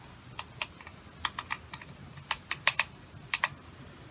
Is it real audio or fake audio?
real